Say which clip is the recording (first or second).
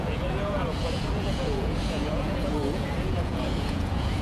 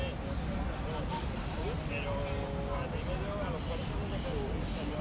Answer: second